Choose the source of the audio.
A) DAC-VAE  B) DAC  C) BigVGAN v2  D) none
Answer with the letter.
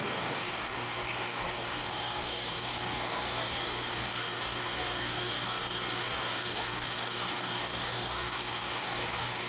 B